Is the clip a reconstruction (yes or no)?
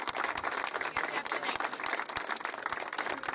no